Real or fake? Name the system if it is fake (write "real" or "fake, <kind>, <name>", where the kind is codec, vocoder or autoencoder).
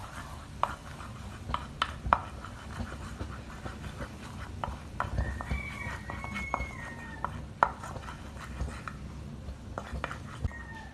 real